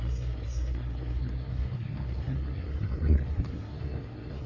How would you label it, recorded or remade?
remade